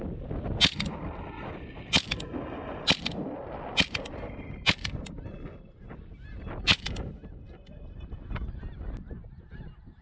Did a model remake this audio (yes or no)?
no